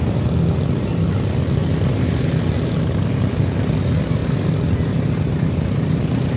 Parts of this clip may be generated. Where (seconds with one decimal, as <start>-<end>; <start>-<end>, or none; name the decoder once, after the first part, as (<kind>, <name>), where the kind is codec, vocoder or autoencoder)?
4.2-4.7 (vocoder, BigVGAN v2)